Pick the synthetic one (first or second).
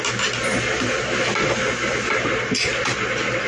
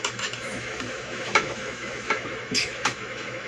second